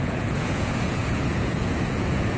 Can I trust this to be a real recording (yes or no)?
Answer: no